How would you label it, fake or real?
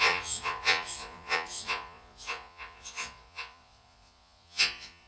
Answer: fake